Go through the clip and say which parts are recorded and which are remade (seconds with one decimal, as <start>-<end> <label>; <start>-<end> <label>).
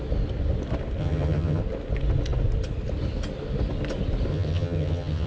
0.0-1.0 recorded; 1.0-1.6 remade; 1.6-4.3 recorded; 4.3-5.3 remade